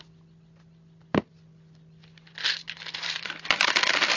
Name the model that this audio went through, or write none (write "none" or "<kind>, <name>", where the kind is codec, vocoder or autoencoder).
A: none